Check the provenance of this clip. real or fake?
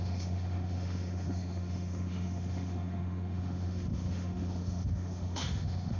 fake